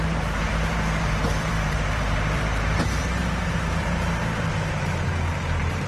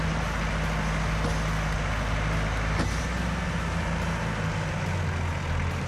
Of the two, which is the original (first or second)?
second